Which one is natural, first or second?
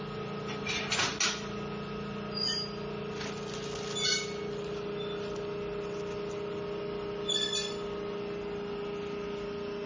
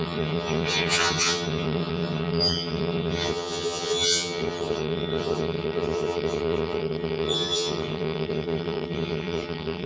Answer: first